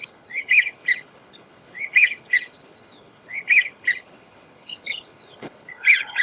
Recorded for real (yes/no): no